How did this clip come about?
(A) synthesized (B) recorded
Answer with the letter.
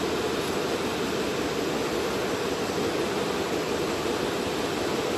B